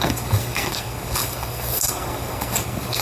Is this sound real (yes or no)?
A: no